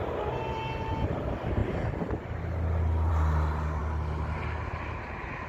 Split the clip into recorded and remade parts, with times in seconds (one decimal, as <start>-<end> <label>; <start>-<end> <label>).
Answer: 0.0-5.5 recorded